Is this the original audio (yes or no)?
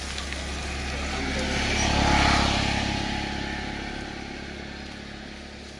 yes